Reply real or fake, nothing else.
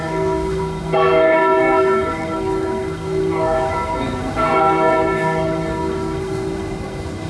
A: fake